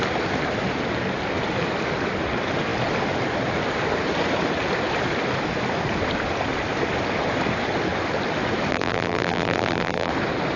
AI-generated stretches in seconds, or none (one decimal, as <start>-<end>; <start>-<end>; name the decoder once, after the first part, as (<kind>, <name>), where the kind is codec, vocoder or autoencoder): 8.7-10.1 (vocoder, BigVGAN v2)